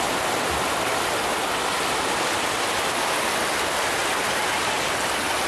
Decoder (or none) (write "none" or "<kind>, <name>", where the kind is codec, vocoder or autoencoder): none